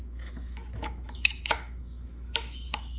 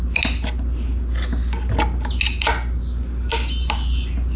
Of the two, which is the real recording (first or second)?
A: second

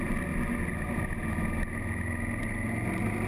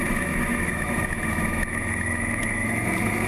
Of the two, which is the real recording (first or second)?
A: first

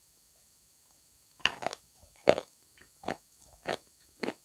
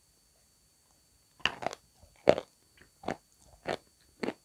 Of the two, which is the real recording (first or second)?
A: second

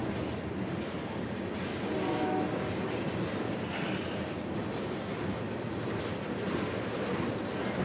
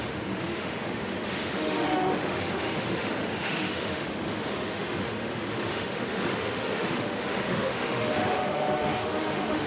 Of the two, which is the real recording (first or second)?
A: first